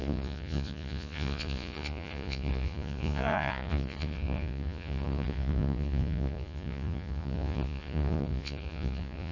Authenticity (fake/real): fake